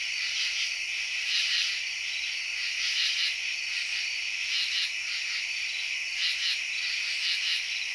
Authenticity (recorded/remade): recorded